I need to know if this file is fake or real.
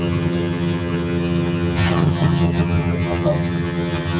fake